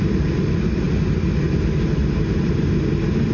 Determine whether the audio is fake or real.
real